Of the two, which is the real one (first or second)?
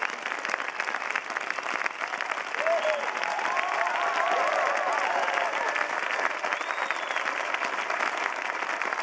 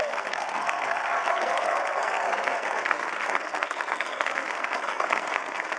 first